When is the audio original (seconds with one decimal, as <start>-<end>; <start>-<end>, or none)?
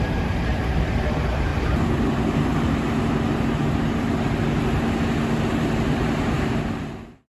1.5-2.1; 2.5-5.7